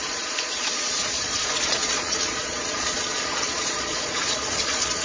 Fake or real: fake